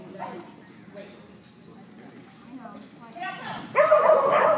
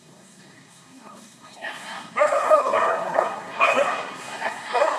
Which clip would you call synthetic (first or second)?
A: second